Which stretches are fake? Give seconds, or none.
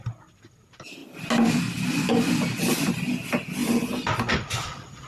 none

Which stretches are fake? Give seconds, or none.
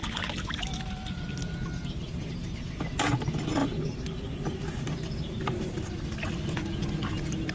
none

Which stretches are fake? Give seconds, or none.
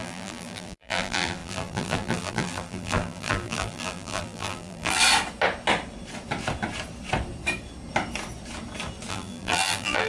0.0-5.0; 9.1-10.1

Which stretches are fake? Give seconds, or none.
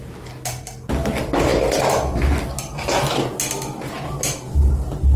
none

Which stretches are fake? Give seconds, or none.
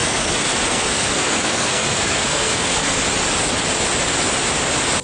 0.0-3.0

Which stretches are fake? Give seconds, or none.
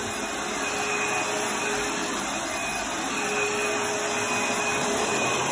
2.0-3.1; 4.7-5.5